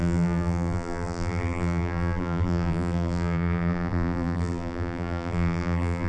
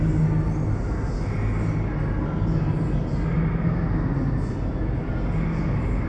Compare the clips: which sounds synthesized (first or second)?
first